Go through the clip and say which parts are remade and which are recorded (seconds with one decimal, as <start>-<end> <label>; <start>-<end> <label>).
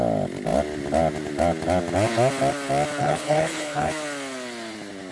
0.0-3.0 recorded; 3.0-3.9 remade; 3.9-5.1 recorded